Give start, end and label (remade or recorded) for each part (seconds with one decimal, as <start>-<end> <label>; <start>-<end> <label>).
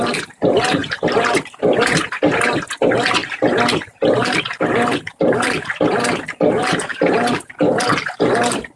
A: 0.0-3.2 recorded; 3.2-4.4 remade; 4.4-6.9 recorded; 6.9-7.9 remade; 7.9-8.8 recorded